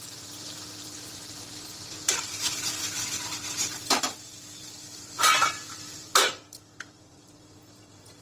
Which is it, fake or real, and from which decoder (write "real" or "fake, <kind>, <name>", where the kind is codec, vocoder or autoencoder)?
real